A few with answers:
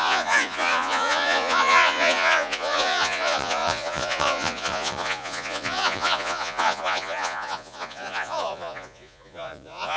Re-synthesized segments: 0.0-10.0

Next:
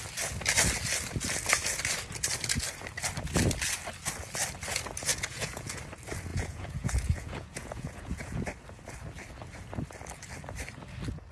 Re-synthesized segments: 5.1-5.8; 6.3-8.4

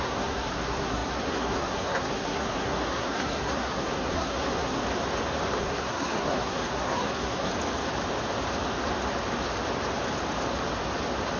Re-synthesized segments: 0.0-4.8; 5.6-7.5

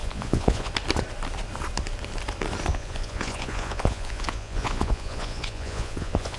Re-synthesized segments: 0.0-0.7; 2.7-6.4